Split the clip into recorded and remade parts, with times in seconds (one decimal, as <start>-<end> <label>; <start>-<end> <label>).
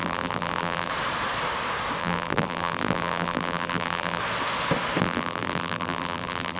0.0-0.9 remade; 0.9-2.0 recorded; 2.0-4.2 remade; 4.2-5.0 recorded; 5.0-6.6 remade